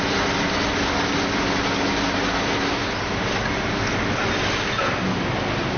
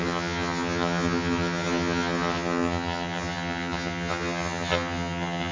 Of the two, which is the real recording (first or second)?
first